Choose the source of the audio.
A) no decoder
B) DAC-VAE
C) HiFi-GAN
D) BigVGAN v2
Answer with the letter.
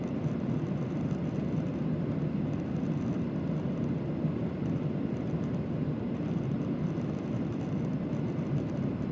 D